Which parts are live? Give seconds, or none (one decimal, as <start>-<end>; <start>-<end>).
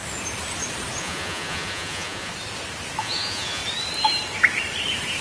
0.0-1.0; 2.3-3.0; 3.6-5.2